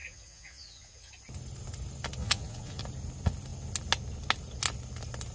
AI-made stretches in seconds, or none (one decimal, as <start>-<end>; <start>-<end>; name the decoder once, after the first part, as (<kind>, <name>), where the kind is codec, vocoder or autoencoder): 0.0-1.1 (vocoder, Vocos); 2.2-2.8